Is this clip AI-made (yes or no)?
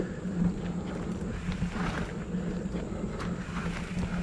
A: no